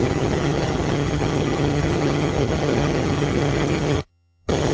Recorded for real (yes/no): no